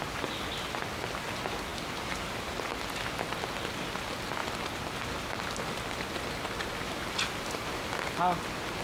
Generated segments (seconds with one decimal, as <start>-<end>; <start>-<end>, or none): 4.4-6.6; 7.0-8.2